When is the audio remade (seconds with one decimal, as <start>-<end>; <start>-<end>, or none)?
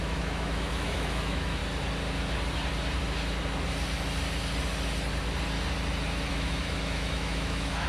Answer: 0.0-1.6; 6.3-7.9